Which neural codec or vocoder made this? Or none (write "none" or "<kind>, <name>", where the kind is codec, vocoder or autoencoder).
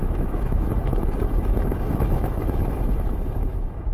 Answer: autoencoder, DAC-VAE